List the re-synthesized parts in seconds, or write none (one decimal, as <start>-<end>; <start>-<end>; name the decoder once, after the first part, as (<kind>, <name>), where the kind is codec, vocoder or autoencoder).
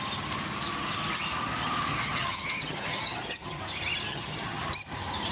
1.9-3.6 (vocoder, HiFi-GAN); 4.1-4.6